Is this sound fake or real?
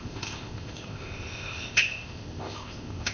fake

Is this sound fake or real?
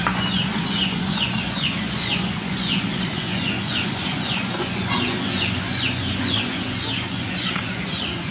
fake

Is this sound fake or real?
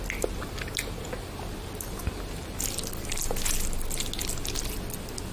real